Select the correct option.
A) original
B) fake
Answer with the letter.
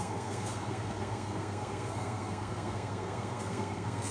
B